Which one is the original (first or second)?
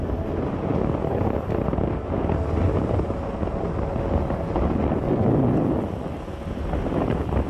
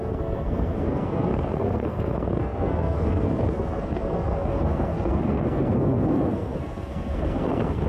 first